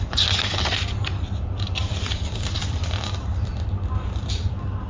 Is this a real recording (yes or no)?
no